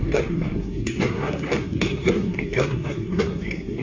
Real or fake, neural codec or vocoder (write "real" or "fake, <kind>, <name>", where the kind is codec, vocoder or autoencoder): fake, codec, SNAC